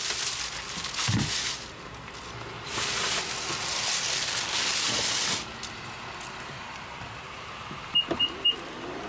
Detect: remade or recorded recorded